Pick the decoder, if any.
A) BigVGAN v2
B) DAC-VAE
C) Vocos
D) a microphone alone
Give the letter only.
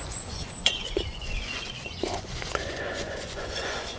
C